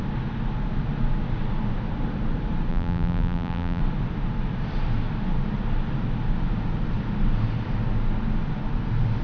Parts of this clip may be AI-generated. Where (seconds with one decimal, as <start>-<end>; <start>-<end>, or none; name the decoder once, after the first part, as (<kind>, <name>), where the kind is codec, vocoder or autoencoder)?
2.7-3.8 (vocoder, BigVGAN v2)